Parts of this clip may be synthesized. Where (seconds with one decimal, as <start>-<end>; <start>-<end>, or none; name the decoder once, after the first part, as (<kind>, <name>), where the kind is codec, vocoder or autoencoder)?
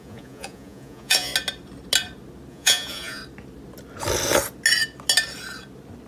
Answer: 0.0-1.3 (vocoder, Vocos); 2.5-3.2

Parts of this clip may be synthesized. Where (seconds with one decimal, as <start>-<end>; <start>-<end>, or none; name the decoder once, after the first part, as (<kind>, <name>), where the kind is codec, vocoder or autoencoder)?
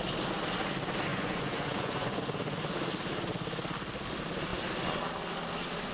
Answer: 1.1-2.2 (vocoder, Vocos)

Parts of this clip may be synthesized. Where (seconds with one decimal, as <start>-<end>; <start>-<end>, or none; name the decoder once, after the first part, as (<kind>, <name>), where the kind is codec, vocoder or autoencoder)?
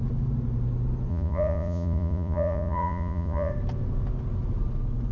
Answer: 1.1-3.5 (vocoder, Vocos)